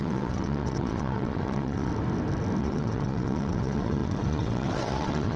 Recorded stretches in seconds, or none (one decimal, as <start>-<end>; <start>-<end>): 1.9-2.6